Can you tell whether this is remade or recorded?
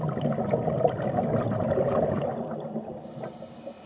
recorded